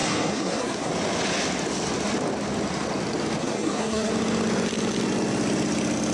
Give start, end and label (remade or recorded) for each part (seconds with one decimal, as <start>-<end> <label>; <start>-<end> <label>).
0.0-0.9 remade; 0.9-3.4 recorded; 3.4-4.1 remade; 4.1-6.1 recorded